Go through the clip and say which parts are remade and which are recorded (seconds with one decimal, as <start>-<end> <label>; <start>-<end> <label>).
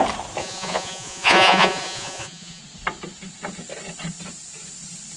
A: 0.0-0.4 recorded; 0.4-2.6 remade; 2.6-5.2 recorded